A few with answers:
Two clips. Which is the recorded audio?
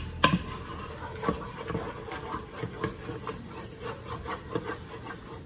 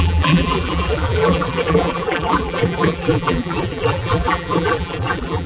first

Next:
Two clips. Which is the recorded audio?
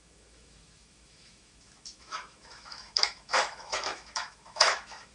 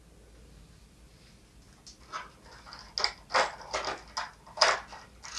second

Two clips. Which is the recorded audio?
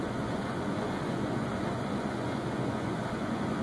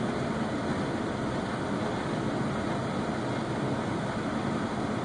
second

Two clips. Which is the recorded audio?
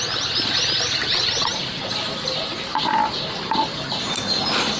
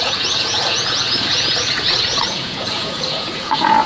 first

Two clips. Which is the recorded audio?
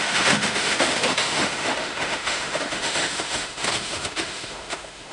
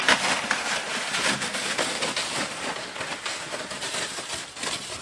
second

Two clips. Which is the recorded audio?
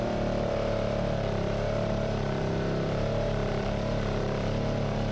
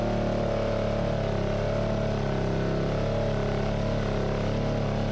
second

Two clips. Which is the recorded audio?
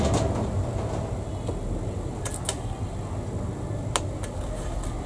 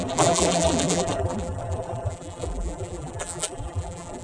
first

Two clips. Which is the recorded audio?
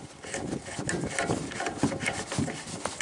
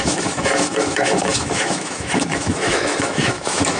first